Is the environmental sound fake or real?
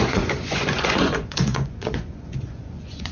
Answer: fake